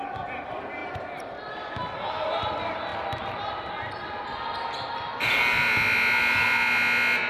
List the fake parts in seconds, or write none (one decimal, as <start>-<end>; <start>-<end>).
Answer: none